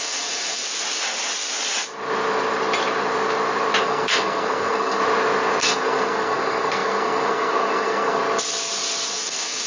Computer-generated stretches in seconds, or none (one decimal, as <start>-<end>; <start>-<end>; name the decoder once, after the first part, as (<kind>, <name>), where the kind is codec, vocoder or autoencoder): 0.0-0.6 (codec, SNAC); 3.8-5.0; 5.6-8.2; 9.1-9.7